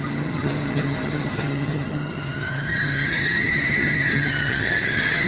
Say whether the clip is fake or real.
fake